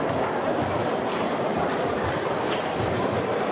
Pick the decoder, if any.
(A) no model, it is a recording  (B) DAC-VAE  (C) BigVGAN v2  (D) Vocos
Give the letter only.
A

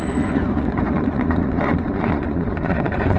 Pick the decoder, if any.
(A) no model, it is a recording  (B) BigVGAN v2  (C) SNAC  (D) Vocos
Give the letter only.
D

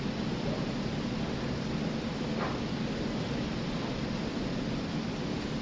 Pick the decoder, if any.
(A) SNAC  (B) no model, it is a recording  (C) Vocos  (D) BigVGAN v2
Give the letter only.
B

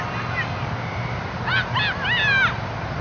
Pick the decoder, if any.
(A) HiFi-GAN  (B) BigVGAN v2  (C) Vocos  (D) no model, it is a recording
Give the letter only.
D